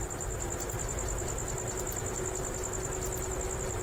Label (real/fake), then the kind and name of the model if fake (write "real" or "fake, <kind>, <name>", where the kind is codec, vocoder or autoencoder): real